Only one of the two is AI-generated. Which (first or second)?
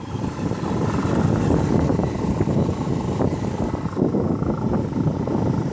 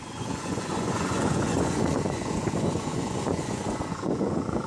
second